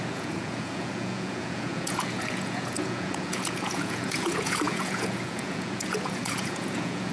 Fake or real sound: fake